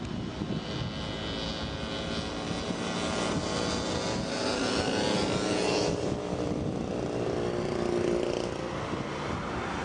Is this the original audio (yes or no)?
yes